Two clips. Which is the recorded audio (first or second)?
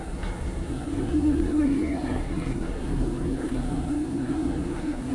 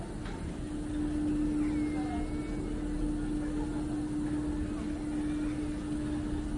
second